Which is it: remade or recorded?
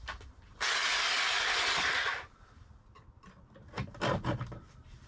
recorded